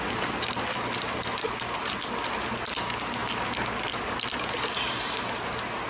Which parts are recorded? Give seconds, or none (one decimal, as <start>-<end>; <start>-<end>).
0.0-5.9